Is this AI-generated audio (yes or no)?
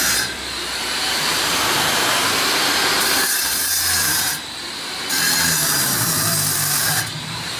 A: yes